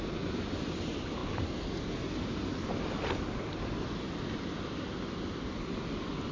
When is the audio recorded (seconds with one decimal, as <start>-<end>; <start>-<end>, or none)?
0.0-6.3

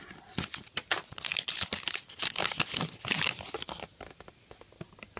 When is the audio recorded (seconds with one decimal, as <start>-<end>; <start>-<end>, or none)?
0.0-5.2

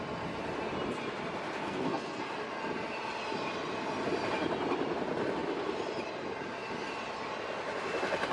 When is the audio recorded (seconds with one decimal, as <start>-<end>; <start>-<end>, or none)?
0.0-1.6; 2.2-8.3

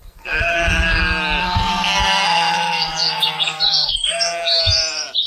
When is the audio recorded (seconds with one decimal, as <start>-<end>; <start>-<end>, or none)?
1.0-1.4; 4.6-5.3